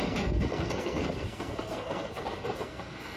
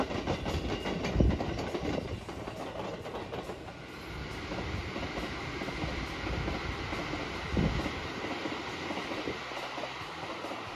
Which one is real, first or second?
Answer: second